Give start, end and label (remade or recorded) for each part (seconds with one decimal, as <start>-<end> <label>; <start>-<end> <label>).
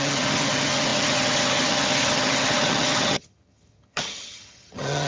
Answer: 0.0-5.1 remade